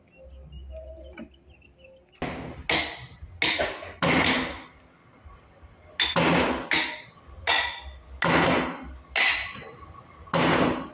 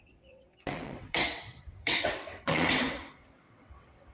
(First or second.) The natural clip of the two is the first